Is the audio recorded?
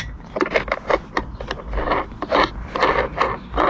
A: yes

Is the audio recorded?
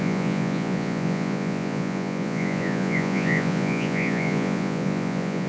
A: no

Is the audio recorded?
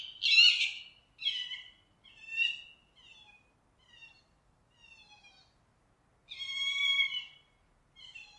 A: yes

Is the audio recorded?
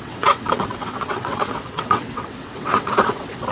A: no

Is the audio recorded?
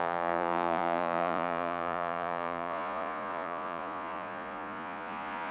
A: no